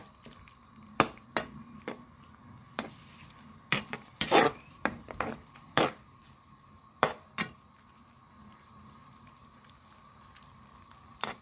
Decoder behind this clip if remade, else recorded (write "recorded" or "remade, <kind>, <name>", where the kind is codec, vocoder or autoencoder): remade, vocoder, BigVGAN v2